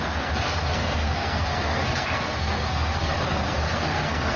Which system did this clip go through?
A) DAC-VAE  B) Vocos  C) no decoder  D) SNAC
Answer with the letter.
D